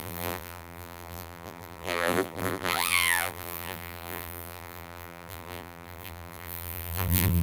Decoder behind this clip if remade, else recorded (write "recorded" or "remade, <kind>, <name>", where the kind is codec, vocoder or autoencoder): remade, vocoder, BigVGAN v2